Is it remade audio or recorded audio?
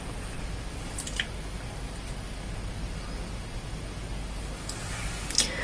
recorded